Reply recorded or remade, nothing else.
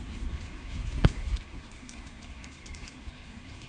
remade